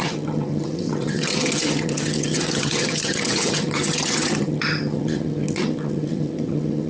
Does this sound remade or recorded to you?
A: remade